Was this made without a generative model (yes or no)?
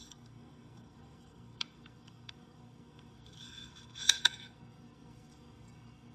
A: no